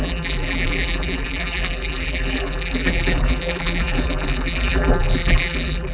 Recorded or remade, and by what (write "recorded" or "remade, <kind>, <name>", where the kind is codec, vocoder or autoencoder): remade, vocoder, BigVGAN v2